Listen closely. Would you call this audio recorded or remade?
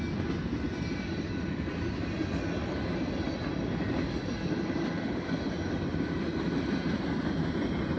recorded